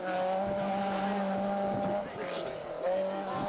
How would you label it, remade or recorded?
recorded